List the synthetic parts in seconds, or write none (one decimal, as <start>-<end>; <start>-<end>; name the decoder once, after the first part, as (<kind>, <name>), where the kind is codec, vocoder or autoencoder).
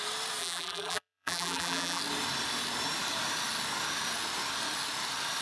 0.4-2.0 (vocoder, BigVGAN v2)